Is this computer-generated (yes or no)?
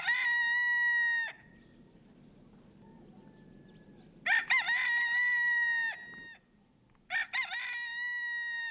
no